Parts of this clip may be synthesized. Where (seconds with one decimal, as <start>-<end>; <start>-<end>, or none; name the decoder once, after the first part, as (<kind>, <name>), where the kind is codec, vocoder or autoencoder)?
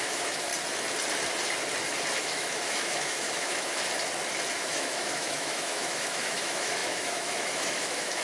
0.0-0.5 (autoencoder, DAC-VAE); 2.2-3.9; 4.5-8.2